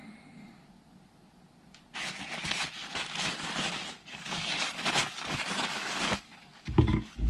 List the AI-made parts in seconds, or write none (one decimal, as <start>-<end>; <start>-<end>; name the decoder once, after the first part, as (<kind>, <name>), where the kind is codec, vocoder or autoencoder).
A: 3.8-7.3 (codec, DAC)